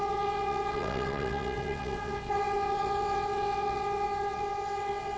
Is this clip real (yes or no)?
no